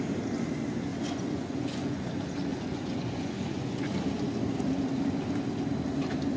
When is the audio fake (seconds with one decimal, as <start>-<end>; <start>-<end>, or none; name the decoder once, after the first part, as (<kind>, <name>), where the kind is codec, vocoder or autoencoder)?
0.9-2.1 (vocoder, Vocos); 2.5-3.9